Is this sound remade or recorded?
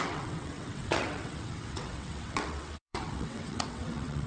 remade